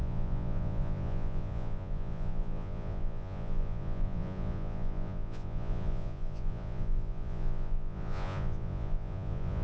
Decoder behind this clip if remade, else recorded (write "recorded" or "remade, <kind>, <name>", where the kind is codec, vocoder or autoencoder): remade, vocoder, Vocos